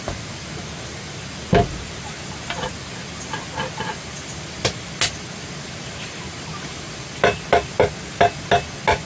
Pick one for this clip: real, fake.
real